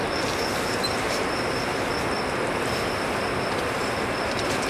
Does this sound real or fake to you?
real